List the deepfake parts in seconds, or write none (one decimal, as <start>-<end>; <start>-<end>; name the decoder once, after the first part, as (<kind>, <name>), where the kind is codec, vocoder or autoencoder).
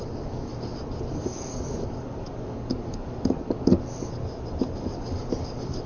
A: 0.0-0.5 (codec, DAC); 1.1-3.7; 4.8-5.9